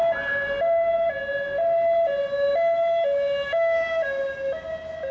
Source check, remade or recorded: recorded